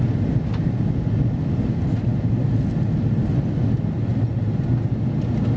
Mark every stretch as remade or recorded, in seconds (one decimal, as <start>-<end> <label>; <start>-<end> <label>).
0.0-5.6 recorded